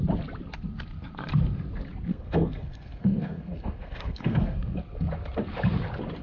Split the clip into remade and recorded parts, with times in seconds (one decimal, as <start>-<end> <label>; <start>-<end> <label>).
0.0-2.1 recorded; 2.1-4.8 remade; 4.8-6.2 recorded